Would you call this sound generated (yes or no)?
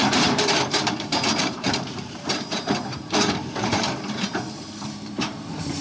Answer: yes